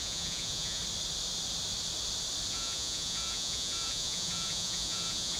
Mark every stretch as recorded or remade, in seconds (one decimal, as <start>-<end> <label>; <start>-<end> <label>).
0.0-0.8 remade; 0.8-2.5 recorded; 2.5-5.4 remade